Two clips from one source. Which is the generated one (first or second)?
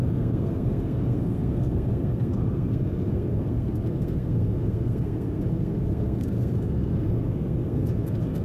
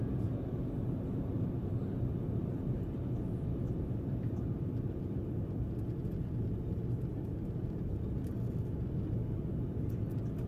first